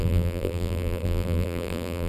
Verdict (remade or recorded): remade